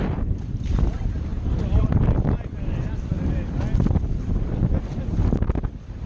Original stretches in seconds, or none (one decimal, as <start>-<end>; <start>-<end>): 0.0-6.1